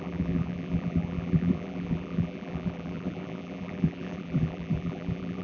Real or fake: fake